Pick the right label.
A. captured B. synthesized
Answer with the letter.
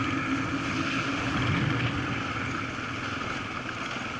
A